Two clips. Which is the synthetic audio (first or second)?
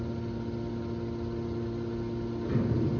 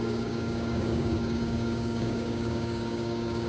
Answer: second